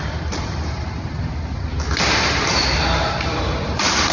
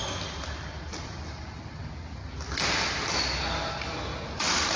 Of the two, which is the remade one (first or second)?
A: first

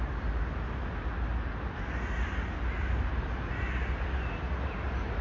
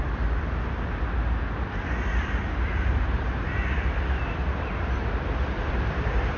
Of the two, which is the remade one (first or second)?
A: second